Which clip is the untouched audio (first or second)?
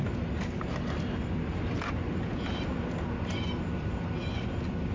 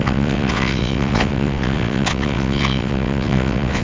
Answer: first